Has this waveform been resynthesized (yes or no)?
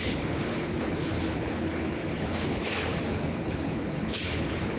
yes